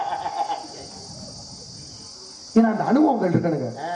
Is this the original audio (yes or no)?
yes